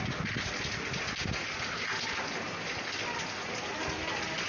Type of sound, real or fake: real